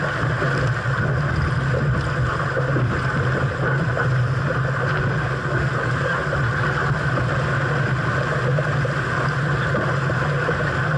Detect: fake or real real